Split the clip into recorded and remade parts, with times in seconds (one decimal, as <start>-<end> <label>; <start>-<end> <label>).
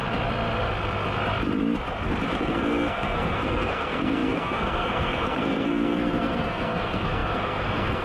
0.0-2.4 recorded; 2.4-8.0 remade